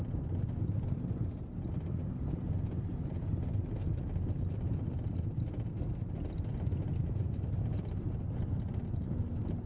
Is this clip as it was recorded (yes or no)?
yes